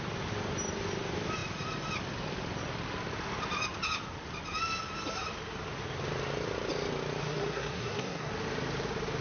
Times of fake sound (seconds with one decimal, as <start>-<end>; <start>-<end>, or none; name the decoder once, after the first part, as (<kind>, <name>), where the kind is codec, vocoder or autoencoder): 7.2-8.3 (codec, SNAC)